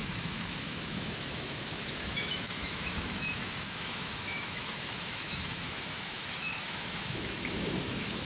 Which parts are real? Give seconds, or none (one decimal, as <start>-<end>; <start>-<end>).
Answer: none